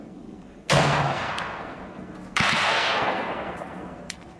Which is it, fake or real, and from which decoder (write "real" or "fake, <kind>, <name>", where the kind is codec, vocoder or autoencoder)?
fake, codec, SNAC